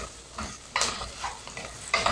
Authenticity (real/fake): real